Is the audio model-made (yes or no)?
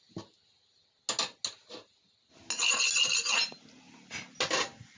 no